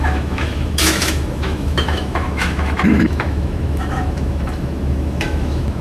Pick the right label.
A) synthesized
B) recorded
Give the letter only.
A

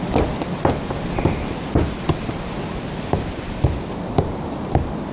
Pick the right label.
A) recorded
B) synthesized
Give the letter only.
A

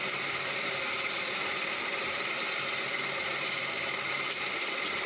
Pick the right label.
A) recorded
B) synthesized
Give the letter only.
A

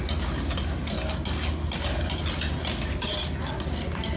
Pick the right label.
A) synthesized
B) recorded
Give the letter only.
B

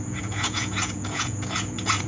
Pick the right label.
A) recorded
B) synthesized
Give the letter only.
B